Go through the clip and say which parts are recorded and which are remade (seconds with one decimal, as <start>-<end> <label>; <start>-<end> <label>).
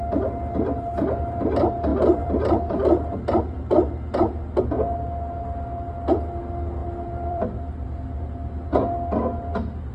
0.0-1.9 recorded; 1.9-2.7 remade; 2.7-6.8 recorded; 6.8-7.7 remade; 7.7-9.9 recorded